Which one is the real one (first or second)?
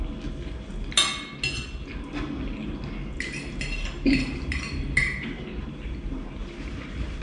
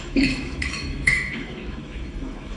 first